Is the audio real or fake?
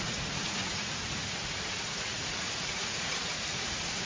fake